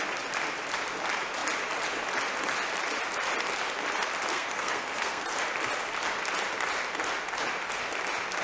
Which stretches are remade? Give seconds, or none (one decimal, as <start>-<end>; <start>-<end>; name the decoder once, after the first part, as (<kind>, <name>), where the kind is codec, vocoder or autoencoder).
4.3-5.2 (codec, SNAC)